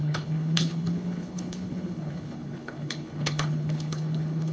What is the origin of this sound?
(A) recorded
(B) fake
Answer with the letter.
B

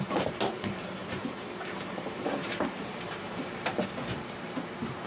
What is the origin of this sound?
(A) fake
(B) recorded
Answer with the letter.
A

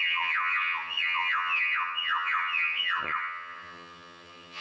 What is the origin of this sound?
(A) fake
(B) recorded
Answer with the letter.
A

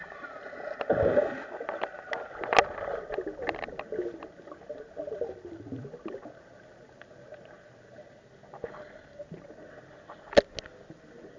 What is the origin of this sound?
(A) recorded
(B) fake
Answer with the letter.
A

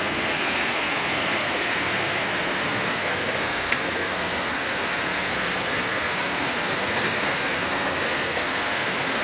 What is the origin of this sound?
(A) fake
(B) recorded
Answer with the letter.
A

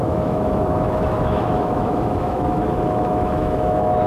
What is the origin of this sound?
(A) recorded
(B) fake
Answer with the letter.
B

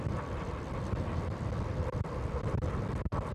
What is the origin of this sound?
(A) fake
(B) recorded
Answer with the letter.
B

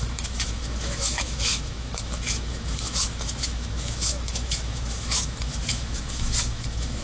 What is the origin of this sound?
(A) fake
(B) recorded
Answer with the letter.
A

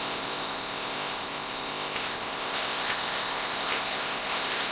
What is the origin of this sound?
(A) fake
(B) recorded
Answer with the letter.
A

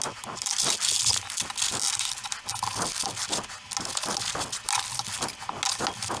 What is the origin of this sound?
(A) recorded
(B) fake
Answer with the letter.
A